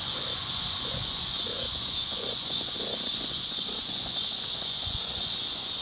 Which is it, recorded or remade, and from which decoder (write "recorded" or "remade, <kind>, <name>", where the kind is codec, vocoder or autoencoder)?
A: remade, vocoder, Vocos